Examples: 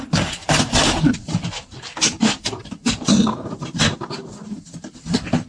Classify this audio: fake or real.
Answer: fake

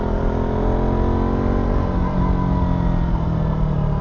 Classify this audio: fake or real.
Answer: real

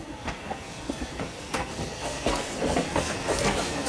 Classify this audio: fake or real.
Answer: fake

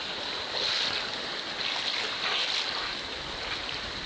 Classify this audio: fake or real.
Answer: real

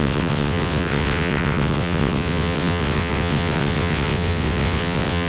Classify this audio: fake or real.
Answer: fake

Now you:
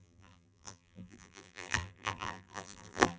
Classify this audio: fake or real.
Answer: fake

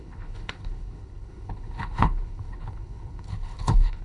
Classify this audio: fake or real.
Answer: fake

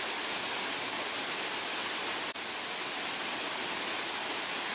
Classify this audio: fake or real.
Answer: real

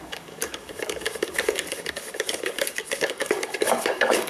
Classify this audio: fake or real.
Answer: fake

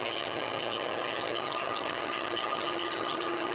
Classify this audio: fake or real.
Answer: fake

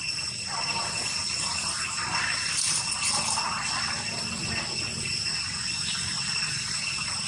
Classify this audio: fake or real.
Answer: real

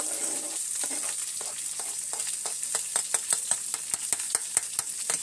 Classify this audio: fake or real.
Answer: real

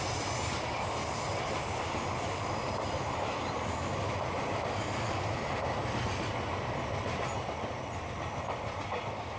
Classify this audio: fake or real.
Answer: real